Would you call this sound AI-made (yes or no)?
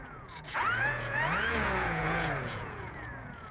yes